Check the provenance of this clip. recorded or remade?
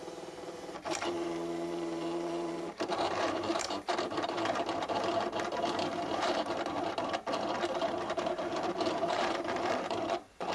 remade